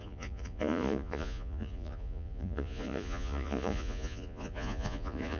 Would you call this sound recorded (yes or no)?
no